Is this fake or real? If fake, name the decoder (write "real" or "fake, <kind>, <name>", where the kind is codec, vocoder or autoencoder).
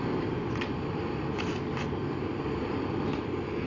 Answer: real